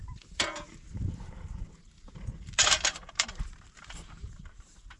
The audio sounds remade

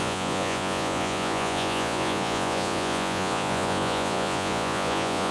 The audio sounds remade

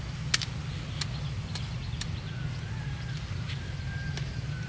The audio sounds recorded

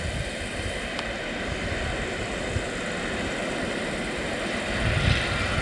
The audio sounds recorded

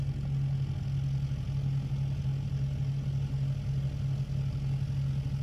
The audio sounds recorded